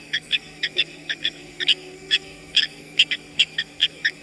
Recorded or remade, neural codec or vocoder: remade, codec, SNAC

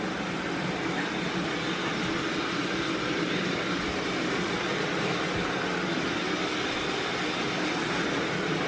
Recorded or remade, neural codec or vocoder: recorded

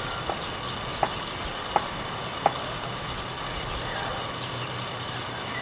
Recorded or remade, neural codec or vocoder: recorded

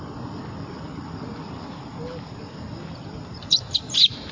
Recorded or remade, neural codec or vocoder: recorded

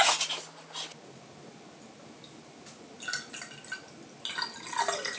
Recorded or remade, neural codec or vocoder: recorded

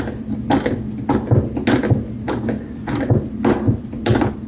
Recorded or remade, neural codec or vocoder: recorded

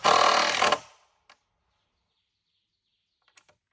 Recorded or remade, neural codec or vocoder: recorded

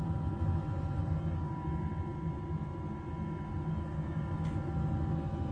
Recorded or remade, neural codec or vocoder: recorded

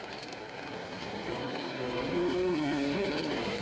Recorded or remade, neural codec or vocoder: remade, codec, SNAC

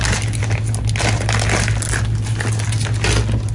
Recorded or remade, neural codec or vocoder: recorded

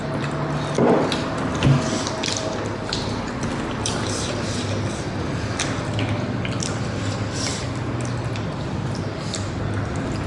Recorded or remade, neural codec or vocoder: recorded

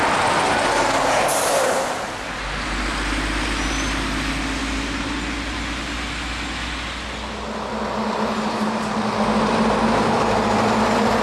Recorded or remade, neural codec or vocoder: recorded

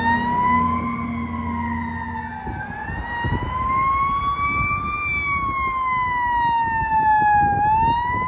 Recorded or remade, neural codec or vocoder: recorded